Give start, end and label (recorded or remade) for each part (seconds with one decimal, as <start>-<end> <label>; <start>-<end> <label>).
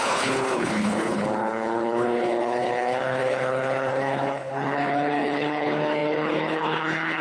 0.0-7.2 remade